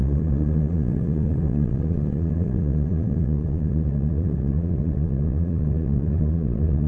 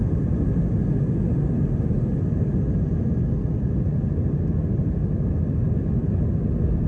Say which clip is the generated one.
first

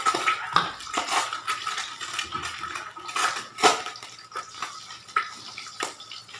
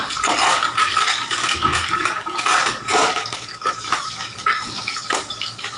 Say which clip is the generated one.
second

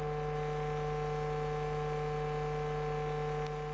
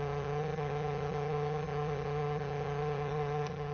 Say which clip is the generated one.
second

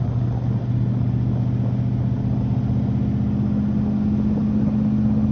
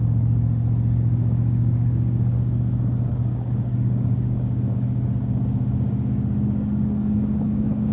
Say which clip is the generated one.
second